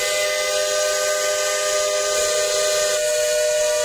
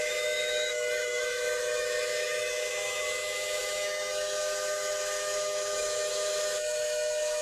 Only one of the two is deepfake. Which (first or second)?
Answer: second